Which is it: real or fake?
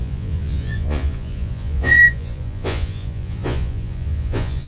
fake